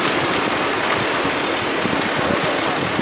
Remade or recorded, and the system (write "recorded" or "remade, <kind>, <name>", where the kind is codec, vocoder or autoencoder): recorded